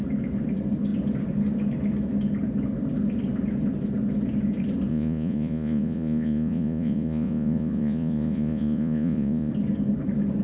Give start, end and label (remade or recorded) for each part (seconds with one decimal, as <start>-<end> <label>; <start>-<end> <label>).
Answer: 0.0-4.9 recorded; 4.9-9.5 remade; 9.5-10.4 recorded